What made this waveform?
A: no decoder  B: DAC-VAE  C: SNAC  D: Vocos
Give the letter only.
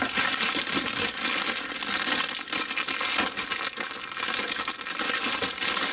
A